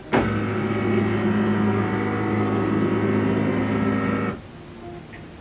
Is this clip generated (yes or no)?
no